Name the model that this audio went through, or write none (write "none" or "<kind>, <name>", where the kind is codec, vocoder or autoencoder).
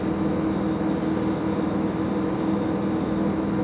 none